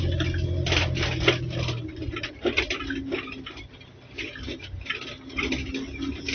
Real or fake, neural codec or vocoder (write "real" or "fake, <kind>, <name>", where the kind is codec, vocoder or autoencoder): real